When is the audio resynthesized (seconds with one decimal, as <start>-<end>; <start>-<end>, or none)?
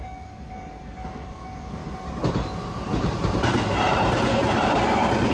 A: 0.0-1.8